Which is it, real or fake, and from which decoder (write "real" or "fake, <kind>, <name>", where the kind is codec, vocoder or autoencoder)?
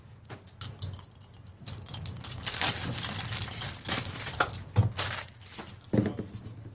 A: real